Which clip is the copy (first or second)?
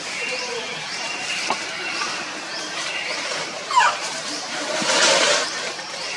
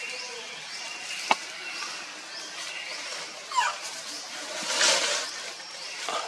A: first